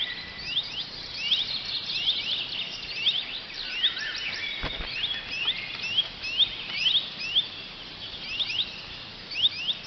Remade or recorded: recorded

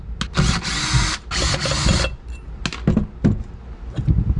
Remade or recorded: recorded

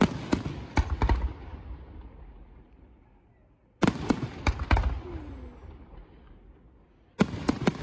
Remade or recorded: recorded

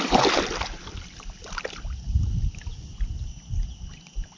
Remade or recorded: recorded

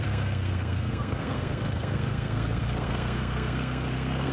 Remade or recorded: remade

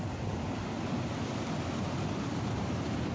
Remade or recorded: recorded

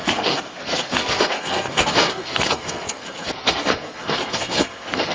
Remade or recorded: remade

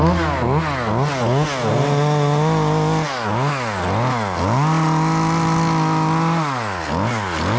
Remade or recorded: recorded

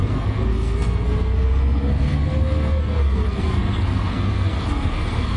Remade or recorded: remade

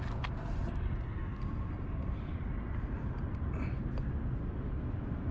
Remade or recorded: recorded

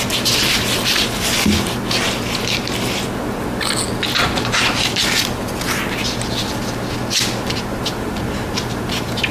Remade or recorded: recorded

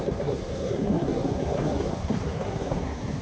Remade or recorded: remade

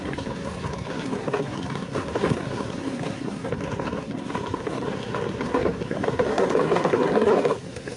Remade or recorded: remade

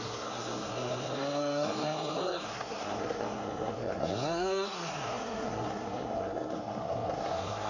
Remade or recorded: remade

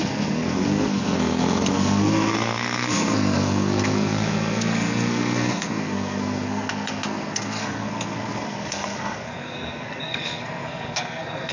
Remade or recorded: remade